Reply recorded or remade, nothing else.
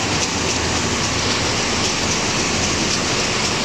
recorded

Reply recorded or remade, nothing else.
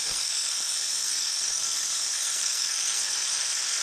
remade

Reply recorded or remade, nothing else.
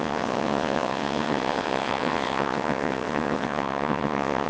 remade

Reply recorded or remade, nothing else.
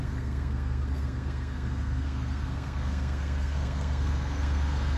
remade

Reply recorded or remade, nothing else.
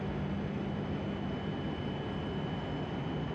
recorded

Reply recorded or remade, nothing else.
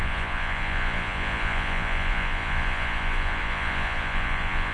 remade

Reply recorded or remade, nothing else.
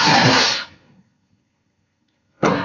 remade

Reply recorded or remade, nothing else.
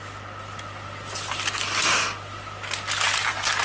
recorded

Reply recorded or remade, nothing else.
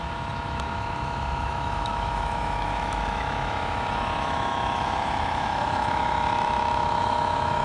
remade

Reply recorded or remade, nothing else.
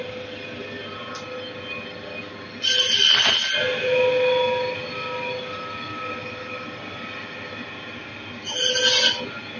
recorded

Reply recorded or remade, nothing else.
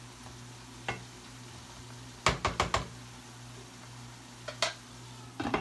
recorded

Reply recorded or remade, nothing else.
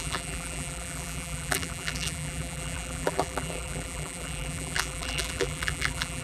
remade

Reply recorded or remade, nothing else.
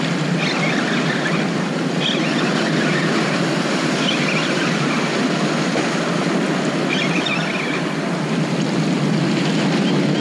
recorded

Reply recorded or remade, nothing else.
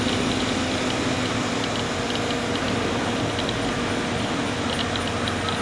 recorded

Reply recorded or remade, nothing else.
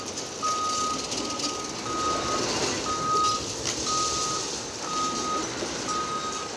recorded